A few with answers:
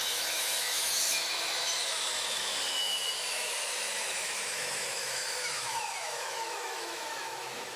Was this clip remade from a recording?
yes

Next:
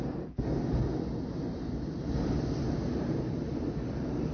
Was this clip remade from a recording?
no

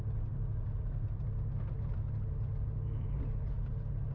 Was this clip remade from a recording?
no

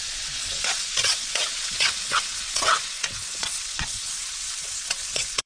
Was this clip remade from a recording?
yes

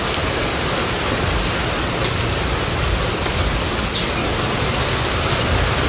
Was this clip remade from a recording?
no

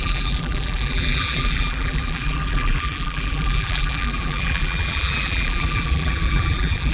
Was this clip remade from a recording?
yes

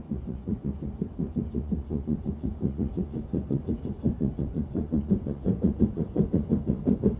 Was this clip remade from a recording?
yes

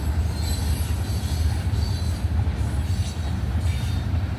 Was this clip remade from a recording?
no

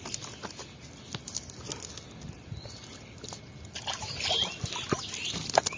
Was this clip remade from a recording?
no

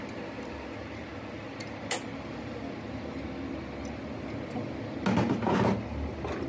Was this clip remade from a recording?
no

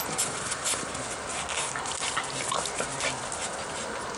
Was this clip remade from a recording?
no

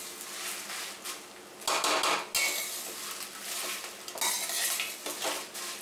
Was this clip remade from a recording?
no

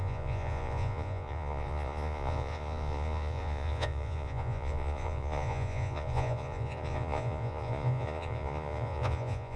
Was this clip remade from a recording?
yes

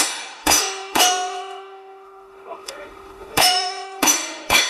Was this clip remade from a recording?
yes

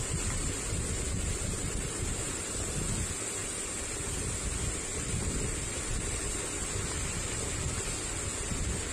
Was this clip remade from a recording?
no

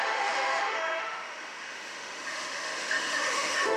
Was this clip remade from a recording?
yes